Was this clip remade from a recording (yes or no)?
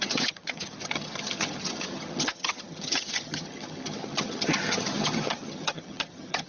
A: yes